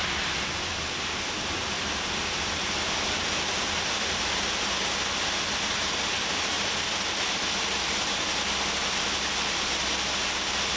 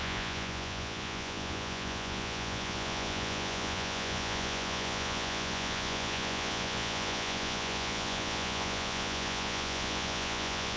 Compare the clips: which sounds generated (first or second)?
second